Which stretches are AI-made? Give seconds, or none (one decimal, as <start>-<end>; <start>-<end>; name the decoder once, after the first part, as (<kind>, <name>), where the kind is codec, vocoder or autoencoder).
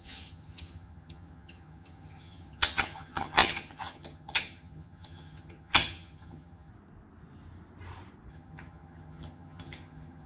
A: 0.0-6.7 (vocoder, HiFi-GAN); 8.3-10.3